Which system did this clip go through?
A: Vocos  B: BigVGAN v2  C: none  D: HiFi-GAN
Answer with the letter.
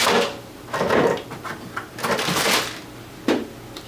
C